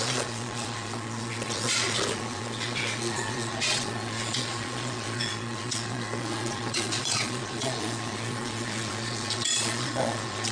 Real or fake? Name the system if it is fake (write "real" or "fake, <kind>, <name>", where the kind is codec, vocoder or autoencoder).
fake, vocoder, Vocos